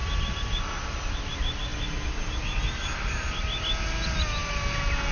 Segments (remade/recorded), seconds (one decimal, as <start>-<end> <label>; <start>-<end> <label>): 0.0-5.1 recorded